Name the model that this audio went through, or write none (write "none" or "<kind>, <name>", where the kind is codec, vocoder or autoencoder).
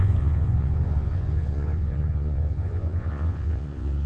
vocoder, Vocos